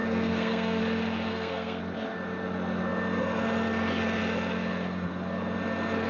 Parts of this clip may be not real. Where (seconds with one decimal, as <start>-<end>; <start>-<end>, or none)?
0.0-0.8; 1.3-1.8